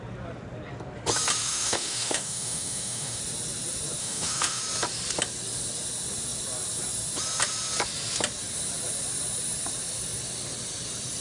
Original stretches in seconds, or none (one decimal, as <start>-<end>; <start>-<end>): 0.0-1.4; 3.2-4.0; 4.6-11.2